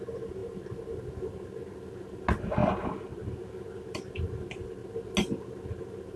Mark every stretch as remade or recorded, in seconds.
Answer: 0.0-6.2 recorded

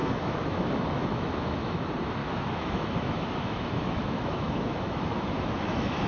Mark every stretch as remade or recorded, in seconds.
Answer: 0.0-1.8 remade; 1.8-2.2 recorded; 2.2-6.1 remade

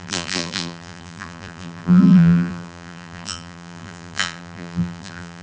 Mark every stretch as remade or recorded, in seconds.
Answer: 0.0-5.4 remade

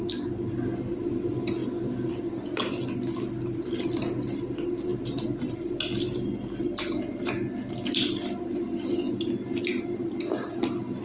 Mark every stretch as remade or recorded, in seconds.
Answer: 0.0-1.6 recorded; 1.6-2.1 remade; 2.1-4.9 recorded; 4.9-5.6 remade; 5.6-11.0 recorded